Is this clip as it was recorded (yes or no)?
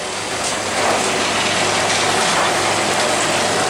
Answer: yes